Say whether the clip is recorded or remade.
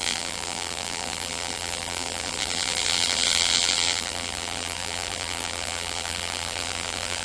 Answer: remade